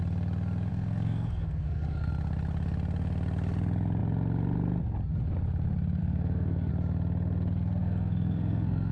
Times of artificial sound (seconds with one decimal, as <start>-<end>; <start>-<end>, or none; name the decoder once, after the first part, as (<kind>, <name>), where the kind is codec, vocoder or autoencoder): 0.7-2.1 (codec, SNAC); 6.0-6.7; 7.8-8.9